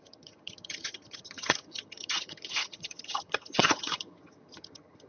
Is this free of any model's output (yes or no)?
no